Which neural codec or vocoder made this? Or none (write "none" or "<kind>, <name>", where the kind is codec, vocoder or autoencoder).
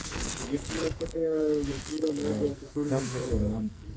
codec, SNAC